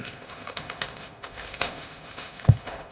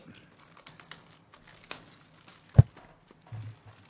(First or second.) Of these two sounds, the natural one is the second